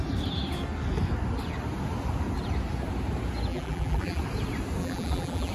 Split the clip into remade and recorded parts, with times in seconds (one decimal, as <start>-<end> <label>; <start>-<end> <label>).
0.0-3.5 recorded; 3.5-4.2 remade; 4.2-4.8 recorded; 4.8-5.5 remade